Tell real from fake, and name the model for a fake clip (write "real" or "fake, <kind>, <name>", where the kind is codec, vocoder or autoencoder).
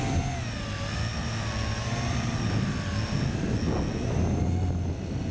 real